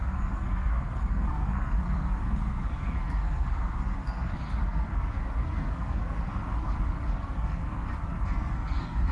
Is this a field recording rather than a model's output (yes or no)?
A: no